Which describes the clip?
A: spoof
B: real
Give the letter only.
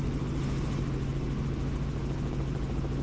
B